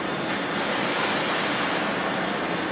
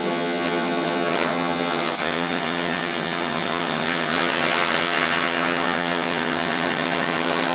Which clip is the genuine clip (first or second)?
first